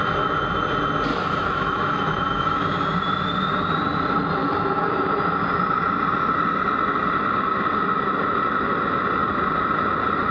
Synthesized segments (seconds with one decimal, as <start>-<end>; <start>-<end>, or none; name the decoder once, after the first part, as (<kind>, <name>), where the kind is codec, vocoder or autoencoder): 1.1-2.7 (autoencoder, DAC-VAE); 4.4-4.9